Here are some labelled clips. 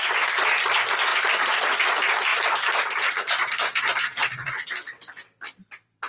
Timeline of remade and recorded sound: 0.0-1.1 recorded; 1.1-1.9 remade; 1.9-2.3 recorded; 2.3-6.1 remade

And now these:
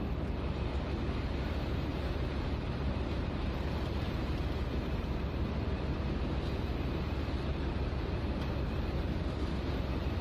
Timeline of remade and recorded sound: 0.0-1.9 recorded; 1.9-4.4 remade; 4.4-10.2 recorded

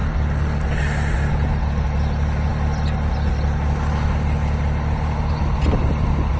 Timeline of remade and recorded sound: 0.0-6.4 recorded